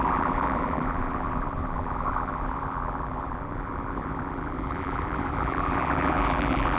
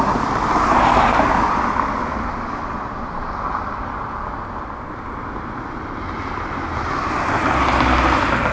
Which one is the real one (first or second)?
second